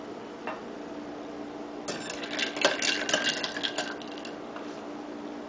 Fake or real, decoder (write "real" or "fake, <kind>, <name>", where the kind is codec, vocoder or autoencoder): real